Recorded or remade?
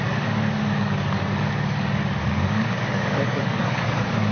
remade